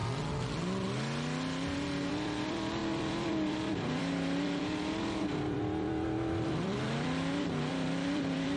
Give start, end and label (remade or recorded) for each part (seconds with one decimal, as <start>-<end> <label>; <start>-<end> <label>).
0.0-2.1 recorded; 2.1-8.6 remade